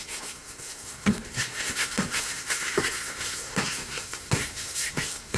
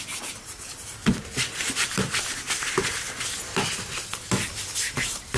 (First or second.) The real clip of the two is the second